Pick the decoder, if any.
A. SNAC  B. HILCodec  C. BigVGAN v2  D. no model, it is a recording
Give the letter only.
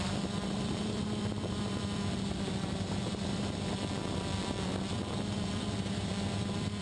C